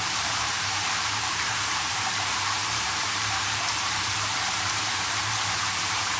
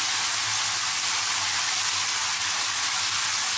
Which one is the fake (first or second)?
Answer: first